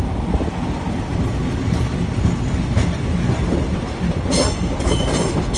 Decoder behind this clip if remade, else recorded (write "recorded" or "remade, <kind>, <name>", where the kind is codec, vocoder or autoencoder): recorded